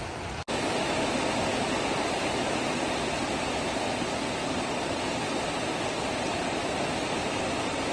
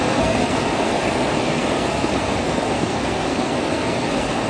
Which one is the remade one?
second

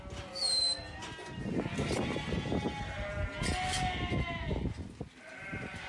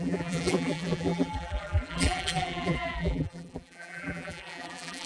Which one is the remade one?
second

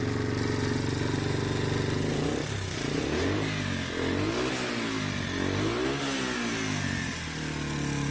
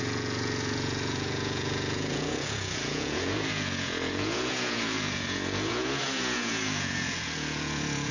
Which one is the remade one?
second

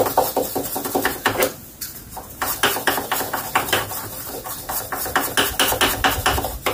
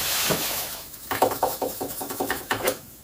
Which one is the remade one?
second